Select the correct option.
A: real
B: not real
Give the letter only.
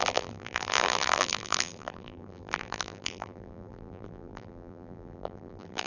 B